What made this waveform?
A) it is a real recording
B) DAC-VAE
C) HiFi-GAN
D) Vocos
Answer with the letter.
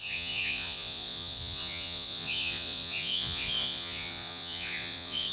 D